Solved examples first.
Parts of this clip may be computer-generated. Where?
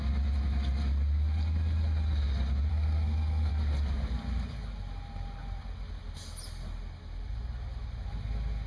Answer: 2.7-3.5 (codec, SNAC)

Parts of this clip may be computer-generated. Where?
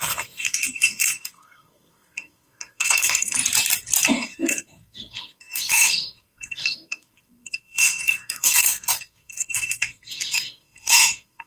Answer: 0.0-3.4 (codec, SNAC); 4.1-11.5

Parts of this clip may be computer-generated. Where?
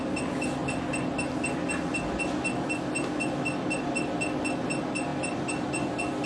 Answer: none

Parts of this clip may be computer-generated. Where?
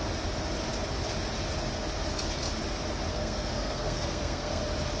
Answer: 3.1-4.6 (codec, SNAC)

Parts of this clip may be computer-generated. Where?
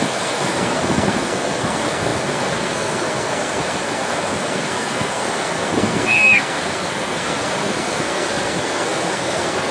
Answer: 0.0-9.7 (codec, SNAC)